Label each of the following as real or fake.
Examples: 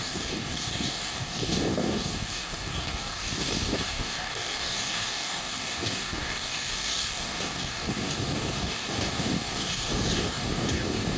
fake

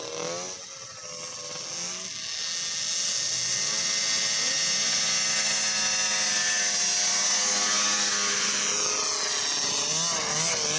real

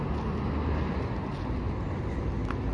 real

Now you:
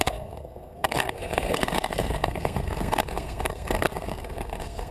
fake